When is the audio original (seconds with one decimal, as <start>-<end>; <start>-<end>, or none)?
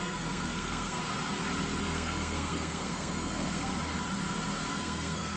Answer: 1.0-1.8; 3.7-4.7